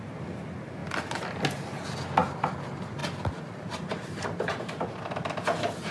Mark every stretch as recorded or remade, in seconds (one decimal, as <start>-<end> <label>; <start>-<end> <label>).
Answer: 0.0-5.9 recorded